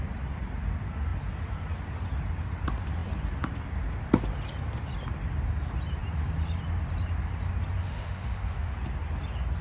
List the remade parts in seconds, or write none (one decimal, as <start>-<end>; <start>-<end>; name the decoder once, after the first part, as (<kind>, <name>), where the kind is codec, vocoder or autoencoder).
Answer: 7.8-8.7 (autoencoder, DAC-VAE)